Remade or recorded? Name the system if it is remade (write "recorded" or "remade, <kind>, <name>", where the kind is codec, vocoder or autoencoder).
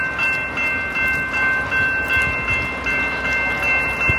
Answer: recorded